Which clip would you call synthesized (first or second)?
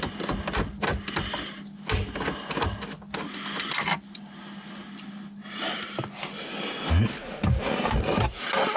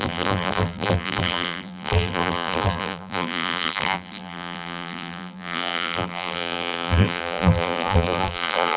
second